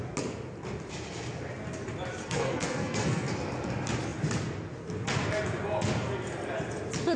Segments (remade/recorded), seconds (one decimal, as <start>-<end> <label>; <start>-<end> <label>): 0.0-2.2 recorded; 2.2-3.3 remade; 3.3-7.2 recorded